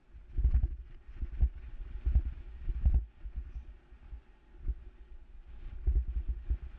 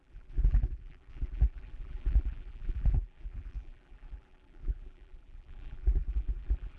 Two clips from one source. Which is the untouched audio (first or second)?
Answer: first